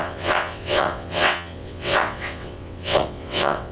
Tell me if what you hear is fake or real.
fake